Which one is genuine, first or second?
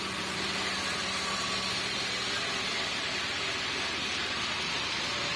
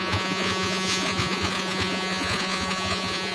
first